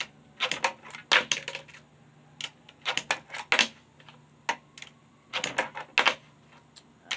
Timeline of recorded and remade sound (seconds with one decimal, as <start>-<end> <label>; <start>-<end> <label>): 0.0-7.2 recorded